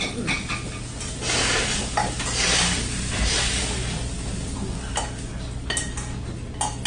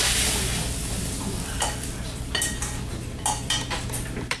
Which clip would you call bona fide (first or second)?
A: first